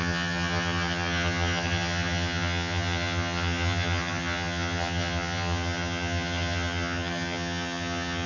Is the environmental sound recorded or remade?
remade